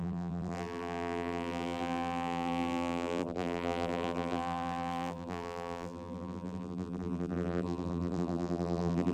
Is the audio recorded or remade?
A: remade